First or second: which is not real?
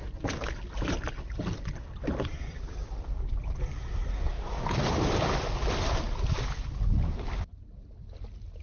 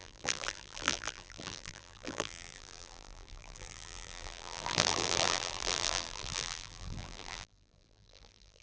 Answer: second